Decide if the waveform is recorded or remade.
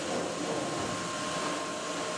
recorded